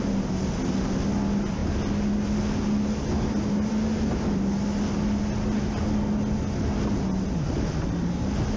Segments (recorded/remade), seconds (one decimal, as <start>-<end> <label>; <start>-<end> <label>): 0.0-8.6 recorded